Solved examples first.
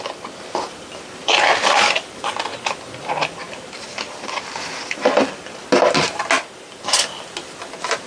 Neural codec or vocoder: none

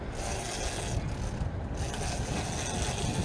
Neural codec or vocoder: none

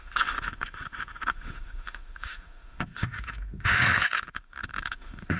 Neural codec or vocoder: autoencoder, DAC-VAE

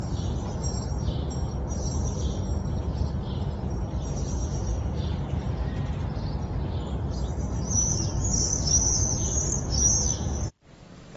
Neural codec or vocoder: none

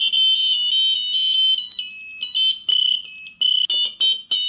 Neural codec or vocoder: none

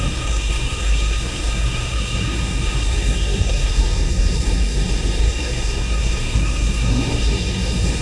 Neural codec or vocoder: codec, SNAC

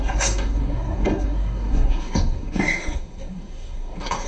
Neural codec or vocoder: codec, SNAC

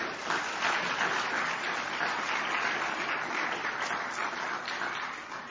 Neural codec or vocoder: none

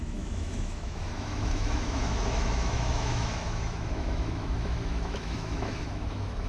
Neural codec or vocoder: autoencoder, DAC-VAE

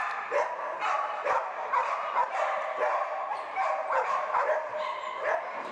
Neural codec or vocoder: vocoder, BigVGAN v2